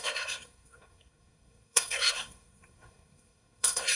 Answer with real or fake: fake